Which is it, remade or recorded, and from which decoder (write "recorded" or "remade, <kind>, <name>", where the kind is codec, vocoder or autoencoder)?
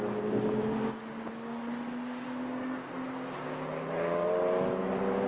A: recorded